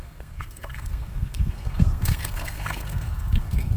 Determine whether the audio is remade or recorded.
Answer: remade